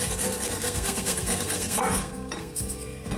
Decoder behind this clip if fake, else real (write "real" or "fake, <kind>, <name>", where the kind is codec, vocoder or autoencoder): fake, codec, SNAC